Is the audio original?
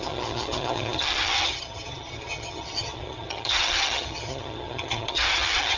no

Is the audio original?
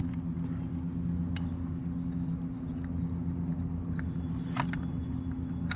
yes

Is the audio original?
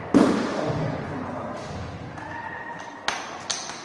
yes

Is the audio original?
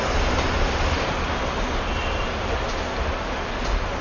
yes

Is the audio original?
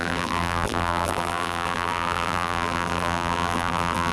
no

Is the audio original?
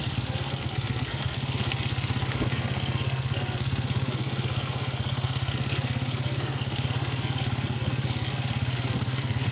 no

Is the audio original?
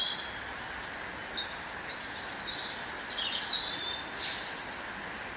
yes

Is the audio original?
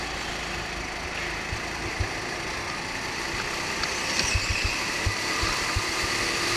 yes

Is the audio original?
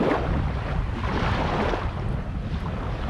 yes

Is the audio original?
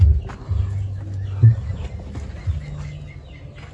yes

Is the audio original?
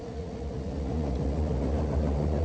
no